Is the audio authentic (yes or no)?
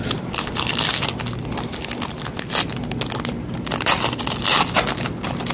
yes